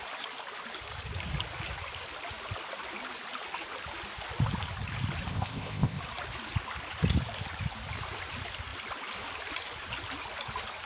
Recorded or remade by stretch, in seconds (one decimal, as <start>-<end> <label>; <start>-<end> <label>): 0.0-5.3 recorded; 5.3-6.0 remade; 6.0-10.9 recorded